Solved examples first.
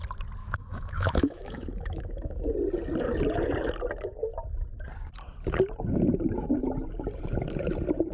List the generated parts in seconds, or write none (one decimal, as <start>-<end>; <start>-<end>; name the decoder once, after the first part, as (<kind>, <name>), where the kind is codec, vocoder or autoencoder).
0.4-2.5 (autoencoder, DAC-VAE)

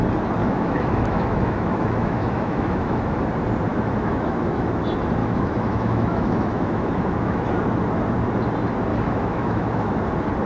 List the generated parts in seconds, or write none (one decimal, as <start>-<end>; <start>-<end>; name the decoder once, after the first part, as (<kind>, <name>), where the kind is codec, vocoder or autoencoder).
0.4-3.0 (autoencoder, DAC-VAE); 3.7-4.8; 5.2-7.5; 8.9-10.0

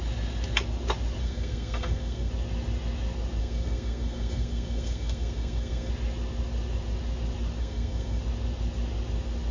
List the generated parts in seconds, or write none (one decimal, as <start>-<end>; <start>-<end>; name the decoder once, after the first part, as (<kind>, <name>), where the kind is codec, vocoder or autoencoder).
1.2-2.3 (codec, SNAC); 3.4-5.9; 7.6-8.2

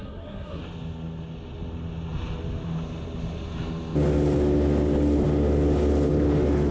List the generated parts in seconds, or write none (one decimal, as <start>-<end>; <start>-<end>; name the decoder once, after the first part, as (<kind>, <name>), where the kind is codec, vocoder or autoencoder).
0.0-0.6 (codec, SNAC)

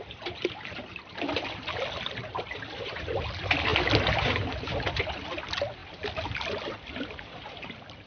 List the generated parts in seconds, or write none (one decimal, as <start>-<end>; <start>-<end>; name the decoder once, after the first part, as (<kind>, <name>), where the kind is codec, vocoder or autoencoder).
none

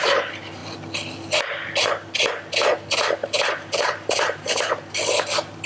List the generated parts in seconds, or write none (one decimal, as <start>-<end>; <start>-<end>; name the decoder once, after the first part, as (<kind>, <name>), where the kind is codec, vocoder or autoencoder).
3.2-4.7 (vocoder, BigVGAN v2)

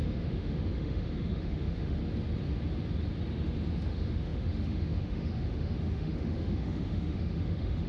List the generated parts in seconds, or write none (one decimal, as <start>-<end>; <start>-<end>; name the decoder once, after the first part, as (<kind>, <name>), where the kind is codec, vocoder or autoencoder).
0.0-2.0 (autoencoder, DAC-VAE); 3.7-7.9